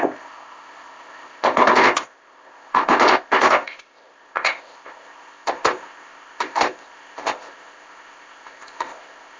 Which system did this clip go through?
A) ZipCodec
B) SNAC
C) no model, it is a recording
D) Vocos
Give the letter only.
A